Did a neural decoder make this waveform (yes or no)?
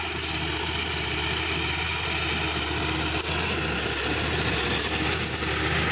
no